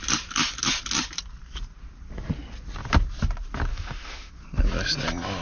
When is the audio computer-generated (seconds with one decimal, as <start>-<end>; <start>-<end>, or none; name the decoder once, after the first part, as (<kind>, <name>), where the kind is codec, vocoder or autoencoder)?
3.7-4.3 (autoencoder, DAC-VAE)